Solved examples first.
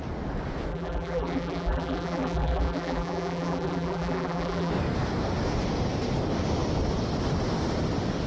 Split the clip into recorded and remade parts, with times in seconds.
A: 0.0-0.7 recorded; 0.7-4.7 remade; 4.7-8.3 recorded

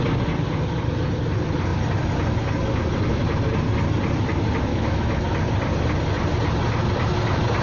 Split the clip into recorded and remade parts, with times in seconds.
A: 0.0-4.7 recorded; 4.7-5.2 remade; 5.2-7.6 recorded

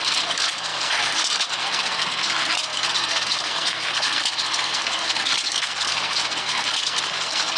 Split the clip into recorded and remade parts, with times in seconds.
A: 0.0-7.6 remade

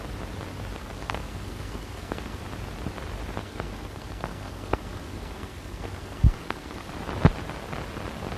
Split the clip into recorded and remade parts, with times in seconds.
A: 0.0-0.8 recorded; 0.8-2.4 remade; 2.4-3.4 recorded; 3.4-6.9 remade; 6.9-8.4 recorded

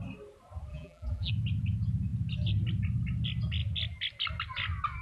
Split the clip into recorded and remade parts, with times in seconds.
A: 0.0-0.7 recorded; 0.7-1.3 remade; 1.3-5.0 recorded

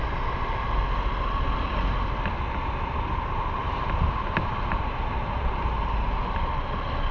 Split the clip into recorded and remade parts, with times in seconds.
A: 0.0-3.6 recorded; 3.6-5.8 remade; 5.8-7.1 recorded